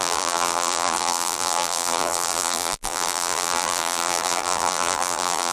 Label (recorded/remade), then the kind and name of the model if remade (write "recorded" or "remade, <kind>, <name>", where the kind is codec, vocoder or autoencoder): remade, vocoder, BigVGAN v2